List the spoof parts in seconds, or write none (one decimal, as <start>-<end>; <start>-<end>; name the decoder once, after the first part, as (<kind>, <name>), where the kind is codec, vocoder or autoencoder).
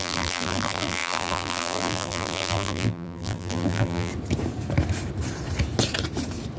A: 0.0-4.1 (vocoder, BigVGAN v2)